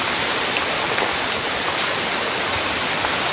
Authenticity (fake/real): real